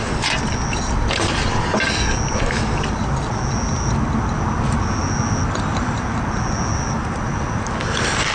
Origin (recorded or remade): recorded